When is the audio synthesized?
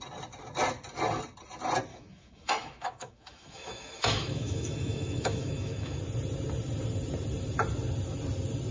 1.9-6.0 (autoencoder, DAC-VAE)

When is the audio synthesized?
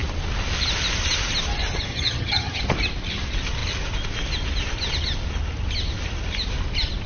1.9-2.6 (vocoder, HiFi-GAN)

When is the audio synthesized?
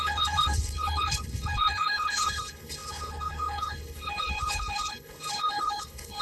0.0-6.2 (codec, HILCodec)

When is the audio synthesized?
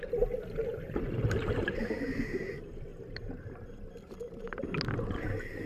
0.6-2.4 (vocoder, BigVGAN v2); 2.9-4.6